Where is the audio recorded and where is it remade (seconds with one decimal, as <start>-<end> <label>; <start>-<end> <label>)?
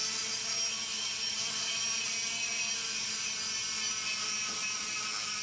0.0-5.4 recorded